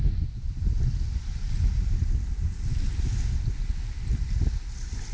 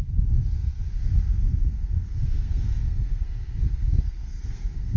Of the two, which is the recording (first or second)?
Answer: first